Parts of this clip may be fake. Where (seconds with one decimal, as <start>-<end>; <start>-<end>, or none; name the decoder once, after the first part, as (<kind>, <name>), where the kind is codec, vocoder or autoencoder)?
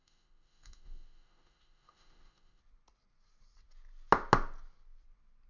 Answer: 0.0-2.6 (autoencoder, DAC-VAE)